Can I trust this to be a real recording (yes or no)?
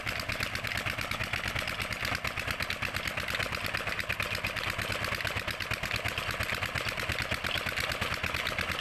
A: yes